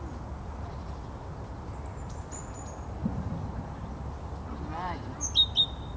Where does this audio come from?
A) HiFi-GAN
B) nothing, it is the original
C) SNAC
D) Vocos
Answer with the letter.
B